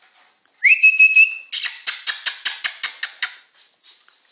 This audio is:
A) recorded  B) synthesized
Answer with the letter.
A